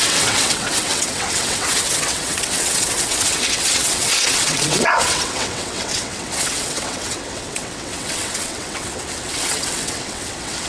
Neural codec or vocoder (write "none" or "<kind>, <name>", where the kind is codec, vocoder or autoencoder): vocoder, WaveNeXt